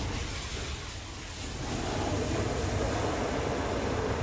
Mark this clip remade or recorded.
recorded